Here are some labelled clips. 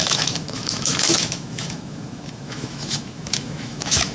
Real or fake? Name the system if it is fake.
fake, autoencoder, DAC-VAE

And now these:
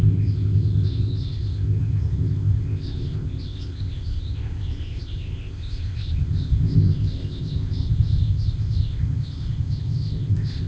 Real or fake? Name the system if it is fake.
fake, codec, ZipCodec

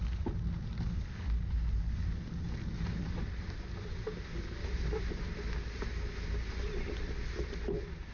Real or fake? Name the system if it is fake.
real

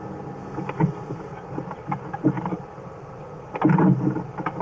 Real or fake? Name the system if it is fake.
real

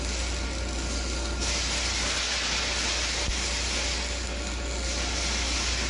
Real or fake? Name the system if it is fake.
real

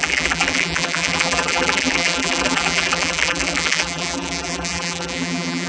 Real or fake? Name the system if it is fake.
fake, vocoder, BigVGAN v2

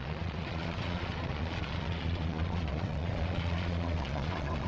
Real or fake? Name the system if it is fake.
fake, vocoder, Vocos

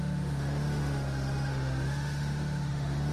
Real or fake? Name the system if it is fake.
fake, autoencoder, DAC-VAE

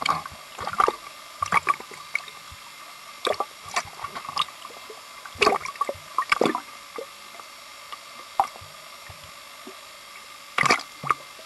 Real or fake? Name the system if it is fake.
real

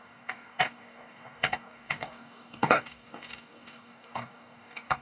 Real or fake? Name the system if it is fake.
fake, codec, DAC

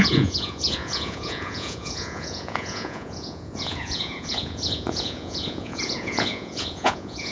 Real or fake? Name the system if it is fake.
fake, vocoder, Vocos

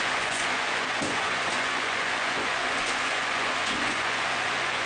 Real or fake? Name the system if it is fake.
fake, vocoder, Vocos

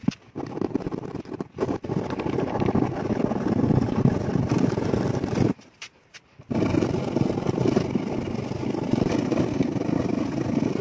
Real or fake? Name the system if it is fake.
real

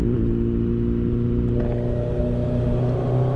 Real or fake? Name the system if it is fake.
real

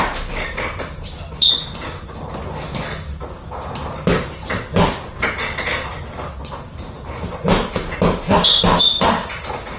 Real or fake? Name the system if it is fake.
real